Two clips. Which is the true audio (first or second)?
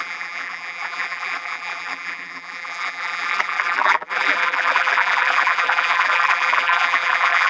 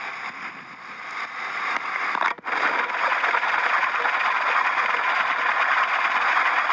second